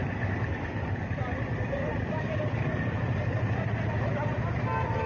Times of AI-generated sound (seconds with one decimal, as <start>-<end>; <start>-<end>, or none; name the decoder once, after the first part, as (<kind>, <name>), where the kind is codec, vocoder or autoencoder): none